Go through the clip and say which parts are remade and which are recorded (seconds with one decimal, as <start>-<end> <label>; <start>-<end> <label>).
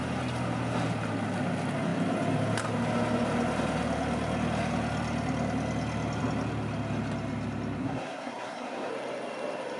0.0-7.8 recorded; 7.8-8.9 remade; 8.9-9.8 recorded